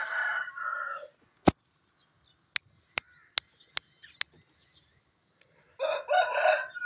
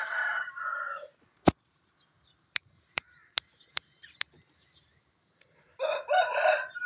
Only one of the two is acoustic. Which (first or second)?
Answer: first